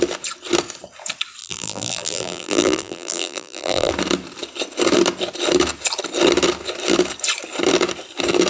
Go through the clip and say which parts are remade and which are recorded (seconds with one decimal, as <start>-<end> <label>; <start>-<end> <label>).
0.0-1.4 recorded; 1.4-3.9 remade; 3.9-8.5 recorded